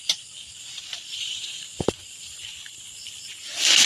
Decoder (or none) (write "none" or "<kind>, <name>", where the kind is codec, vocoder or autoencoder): vocoder, BigVGAN v2